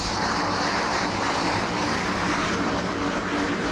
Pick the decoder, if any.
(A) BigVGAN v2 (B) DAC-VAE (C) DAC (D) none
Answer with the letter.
A